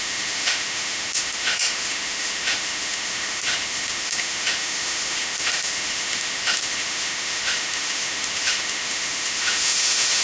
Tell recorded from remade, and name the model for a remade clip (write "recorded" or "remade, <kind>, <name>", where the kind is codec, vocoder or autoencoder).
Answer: remade, autoencoder, DAC-VAE